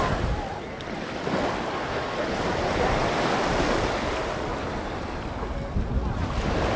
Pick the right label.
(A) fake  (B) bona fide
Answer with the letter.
B